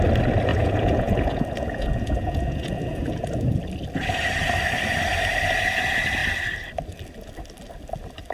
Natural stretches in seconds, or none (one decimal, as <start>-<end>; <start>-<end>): 0.0-0.5; 3.6-8.3